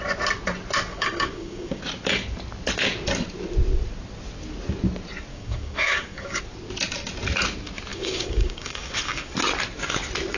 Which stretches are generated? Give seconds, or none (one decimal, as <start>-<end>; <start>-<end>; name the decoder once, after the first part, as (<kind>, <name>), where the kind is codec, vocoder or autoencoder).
0.9-1.8 (codec, DAC); 5.3-6.4; 7.9-9.3